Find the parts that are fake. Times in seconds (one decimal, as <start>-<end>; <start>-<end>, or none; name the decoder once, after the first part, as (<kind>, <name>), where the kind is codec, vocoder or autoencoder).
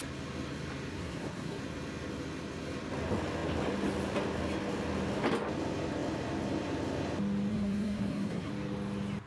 0.9-1.6 (codec, SNAC); 7.5-8.5